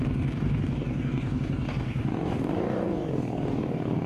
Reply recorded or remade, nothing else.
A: remade